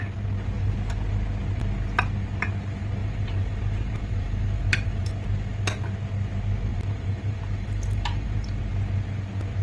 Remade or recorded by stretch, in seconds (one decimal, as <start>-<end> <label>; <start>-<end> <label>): 0.0-3.0 recorded; 3.0-5.1 remade; 5.1-6.7 recorded; 6.7-8.6 remade; 8.6-9.6 recorded